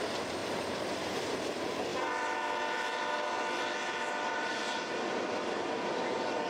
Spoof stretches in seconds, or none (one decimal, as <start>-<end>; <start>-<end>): none